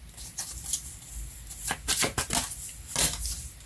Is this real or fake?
real